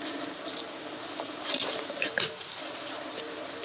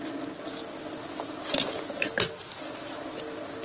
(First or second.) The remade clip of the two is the first